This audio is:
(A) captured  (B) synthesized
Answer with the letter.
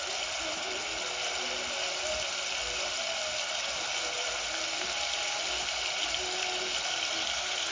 A